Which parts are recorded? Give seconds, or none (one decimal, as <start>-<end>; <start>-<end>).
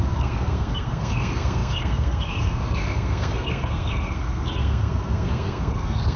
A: none